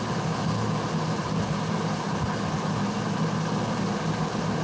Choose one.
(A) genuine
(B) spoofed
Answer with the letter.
A